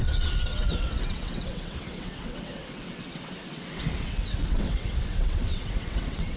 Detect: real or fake fake